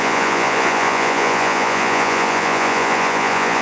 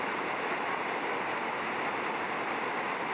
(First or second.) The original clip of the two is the second